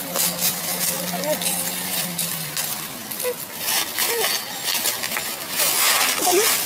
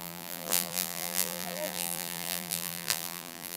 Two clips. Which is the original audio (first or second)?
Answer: first